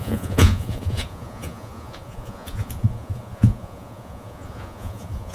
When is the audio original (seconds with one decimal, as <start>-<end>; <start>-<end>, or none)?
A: none